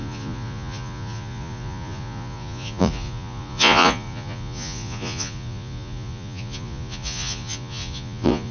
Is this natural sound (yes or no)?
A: no